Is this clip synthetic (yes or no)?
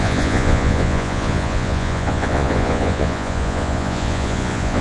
yes